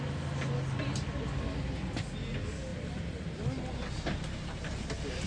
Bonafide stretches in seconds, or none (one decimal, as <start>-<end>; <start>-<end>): 0.0-5.3